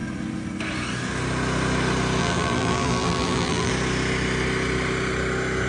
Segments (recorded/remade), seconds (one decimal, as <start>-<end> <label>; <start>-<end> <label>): 0.0-2.2 recorded; 2.2-3.7 remade; 3.7-5.7 recorded